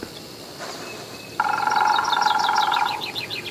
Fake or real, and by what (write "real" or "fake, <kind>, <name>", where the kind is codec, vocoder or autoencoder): real